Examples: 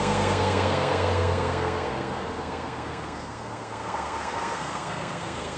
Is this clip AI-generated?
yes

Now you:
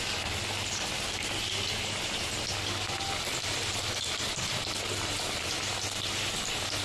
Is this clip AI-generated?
no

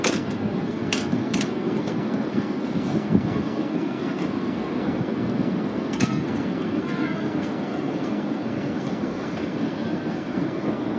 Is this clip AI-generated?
yes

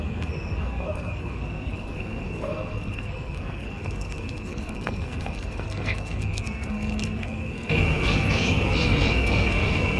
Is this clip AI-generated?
yes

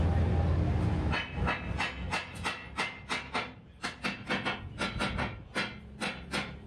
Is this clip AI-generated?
no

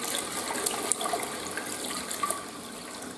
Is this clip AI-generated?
no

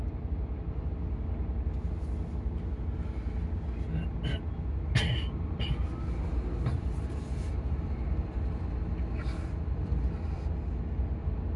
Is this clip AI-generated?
no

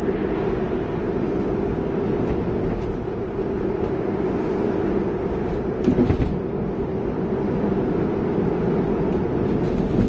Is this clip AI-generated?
no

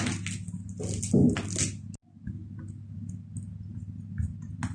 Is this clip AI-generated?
no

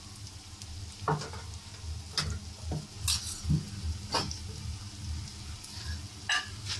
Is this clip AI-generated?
no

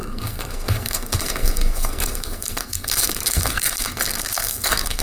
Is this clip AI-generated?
yes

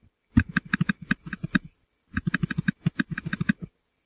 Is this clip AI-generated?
no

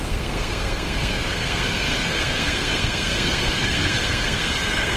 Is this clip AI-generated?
yes